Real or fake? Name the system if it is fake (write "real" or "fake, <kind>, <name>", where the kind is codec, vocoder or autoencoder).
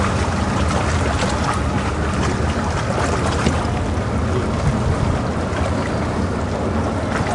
real